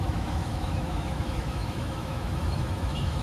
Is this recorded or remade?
remade